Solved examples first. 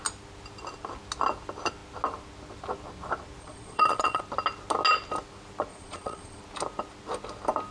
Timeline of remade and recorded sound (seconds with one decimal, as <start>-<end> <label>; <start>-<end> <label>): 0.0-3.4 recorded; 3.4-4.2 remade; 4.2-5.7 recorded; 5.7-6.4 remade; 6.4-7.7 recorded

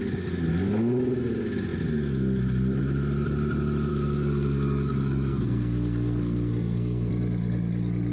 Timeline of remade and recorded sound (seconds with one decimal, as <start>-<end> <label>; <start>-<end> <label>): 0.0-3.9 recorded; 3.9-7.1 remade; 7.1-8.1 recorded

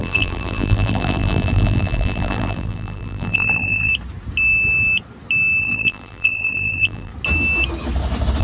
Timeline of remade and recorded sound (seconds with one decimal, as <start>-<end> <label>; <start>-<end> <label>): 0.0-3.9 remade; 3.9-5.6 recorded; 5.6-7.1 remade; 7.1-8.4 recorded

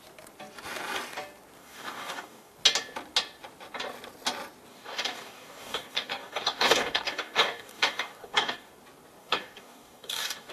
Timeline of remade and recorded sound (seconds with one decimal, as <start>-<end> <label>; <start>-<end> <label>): 0.0-1.6 recorded; 1.6-2.5 remade; 2.5-4.7 recorded; 4.7-8.7 remade; 8.7-9.2 recorded; 9.2-10.5 remade